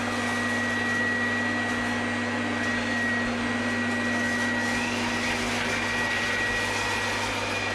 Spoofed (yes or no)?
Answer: no